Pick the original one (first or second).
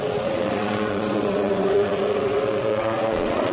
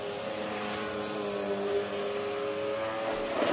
second